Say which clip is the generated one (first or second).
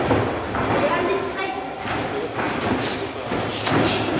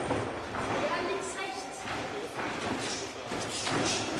second